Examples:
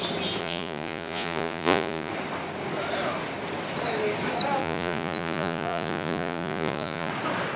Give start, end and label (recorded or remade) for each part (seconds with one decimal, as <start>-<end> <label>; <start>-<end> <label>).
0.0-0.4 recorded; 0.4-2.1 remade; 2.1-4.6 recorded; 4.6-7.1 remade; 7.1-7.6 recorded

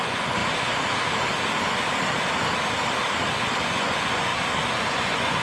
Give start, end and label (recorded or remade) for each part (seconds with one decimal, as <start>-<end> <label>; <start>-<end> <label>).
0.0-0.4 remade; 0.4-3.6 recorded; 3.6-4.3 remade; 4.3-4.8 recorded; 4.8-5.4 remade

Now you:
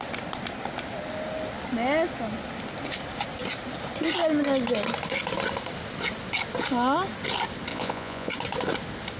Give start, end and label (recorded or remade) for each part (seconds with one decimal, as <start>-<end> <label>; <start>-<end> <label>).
0.0-7.7 recorded; 7.7-8.3 remade; 8.3-9.2 recorded

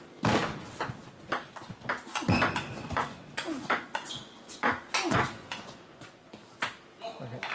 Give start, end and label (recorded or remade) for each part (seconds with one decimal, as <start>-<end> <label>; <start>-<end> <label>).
0.0-2.1 recorded; 2.1-6.6 remade; 6.6-7.5 recorded

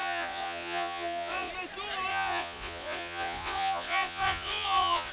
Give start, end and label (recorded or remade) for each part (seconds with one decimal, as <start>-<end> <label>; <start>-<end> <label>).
0.0-1.5 remade; 1.5-2.1 recorded; 2.1-5.1 remade